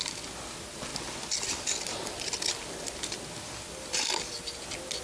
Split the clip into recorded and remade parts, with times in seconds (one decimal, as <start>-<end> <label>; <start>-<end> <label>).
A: 0.0-5.0 recorded